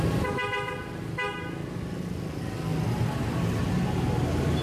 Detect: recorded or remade recorded